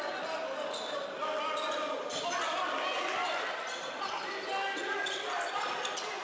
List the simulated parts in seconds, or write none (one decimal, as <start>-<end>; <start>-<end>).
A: none